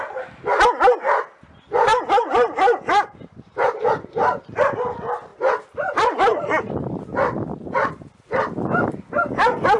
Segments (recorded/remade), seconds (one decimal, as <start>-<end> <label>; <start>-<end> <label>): 0.0-1.9 recorded; 1.9-4.7 remade; 4.7-5.3 recorded; 5.3-9.8 remade